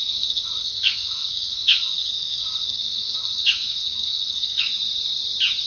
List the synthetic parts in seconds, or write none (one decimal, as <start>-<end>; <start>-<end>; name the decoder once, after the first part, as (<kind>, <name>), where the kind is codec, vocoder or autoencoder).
0.0-4.7 (codec, SNAC)